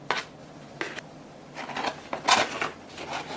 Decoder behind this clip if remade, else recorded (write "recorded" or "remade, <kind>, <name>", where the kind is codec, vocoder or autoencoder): recorded